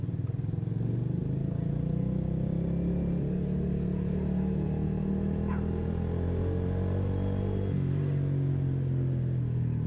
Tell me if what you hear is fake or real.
real